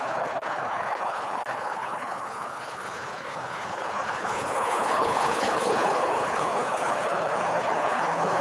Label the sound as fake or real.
fake